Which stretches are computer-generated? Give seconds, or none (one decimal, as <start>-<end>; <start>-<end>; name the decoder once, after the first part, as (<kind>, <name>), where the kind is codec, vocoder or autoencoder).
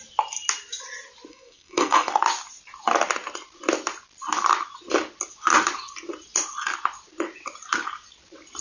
1.3-2.1 (codec, SNAC)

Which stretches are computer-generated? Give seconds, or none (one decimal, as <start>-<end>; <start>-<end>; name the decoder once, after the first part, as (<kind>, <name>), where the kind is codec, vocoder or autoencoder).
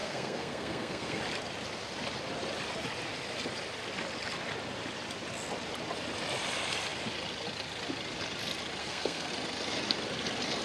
0.0-1.2 (codec, SNAC); 8.8-9.3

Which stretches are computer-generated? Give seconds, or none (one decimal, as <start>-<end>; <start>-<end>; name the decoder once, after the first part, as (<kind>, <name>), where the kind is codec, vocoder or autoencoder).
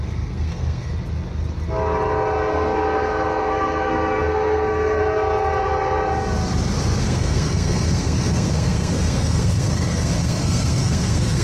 0.0-0.9 (codec, SNAC); 2.5-5.0; 7.0-11.4